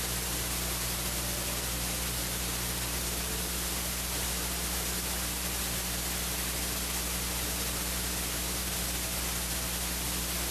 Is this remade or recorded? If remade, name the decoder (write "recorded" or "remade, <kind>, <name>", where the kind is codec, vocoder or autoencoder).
recorded